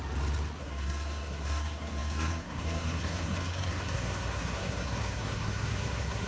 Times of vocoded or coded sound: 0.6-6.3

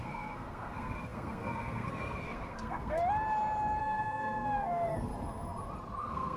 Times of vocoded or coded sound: 0.0-3.0; 3.8-5.1; 6.0-6.4

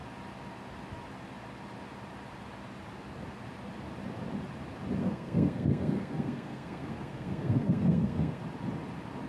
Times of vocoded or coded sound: 5.0-8.4

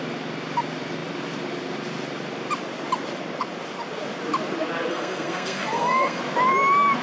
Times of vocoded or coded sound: 4.9-6.2